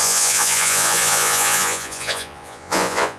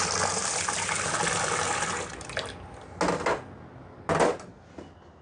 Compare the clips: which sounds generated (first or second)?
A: first